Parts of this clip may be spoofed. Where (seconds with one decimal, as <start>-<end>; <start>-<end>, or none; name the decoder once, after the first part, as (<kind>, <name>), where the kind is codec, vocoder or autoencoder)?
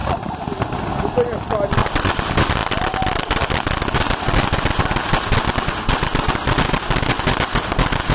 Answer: none